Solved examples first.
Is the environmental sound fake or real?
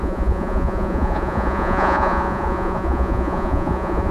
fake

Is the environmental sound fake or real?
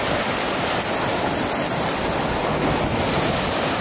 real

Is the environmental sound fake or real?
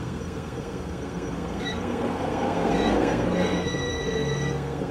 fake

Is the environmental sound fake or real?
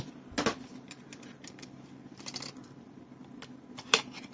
fake